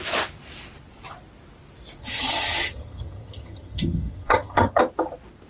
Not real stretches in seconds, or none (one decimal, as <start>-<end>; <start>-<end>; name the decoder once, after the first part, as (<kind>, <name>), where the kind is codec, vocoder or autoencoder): 2.0-4.8 (vocoder, HiFi-GAN)